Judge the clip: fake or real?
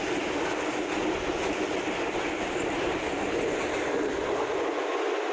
real